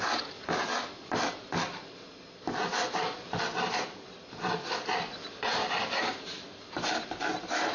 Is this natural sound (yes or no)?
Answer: yes